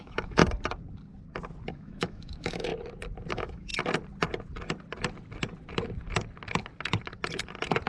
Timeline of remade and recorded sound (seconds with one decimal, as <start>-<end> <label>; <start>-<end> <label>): 0.0-0.4 remade; 0.4-1.7 recorded; 1.7-2.7 remade; 2.7-3.3 recorded; 3.3-3.7 remade; 3.7-7.9 recorded